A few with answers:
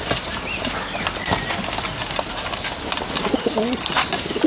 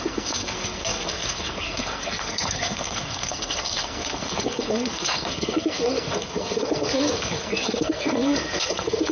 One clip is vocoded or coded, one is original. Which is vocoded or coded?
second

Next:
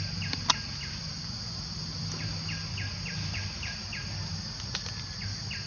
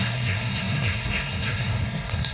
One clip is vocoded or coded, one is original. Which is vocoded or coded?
second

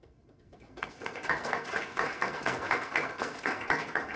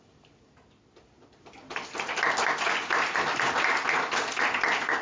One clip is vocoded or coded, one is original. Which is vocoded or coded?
first